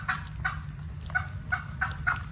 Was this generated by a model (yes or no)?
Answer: no